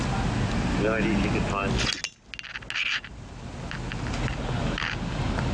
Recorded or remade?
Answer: recorded